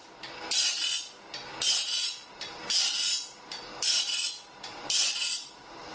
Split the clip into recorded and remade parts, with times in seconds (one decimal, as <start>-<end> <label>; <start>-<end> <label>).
0.0-2.3 recorded; 2.3-3.7 remade; 3.7-4.7 recorded; 4.7-5.9 remade